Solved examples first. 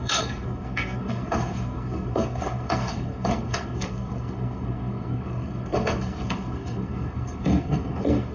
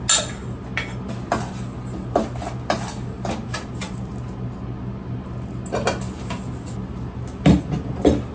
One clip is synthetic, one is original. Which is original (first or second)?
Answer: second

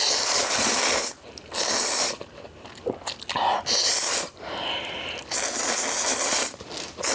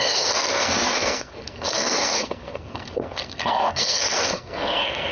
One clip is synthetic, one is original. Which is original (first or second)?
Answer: first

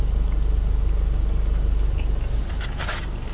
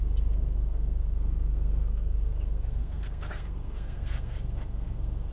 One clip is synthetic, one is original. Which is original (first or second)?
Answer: first